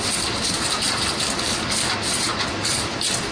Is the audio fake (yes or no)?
no